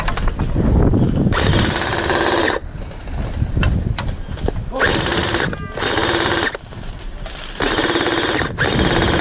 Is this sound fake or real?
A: real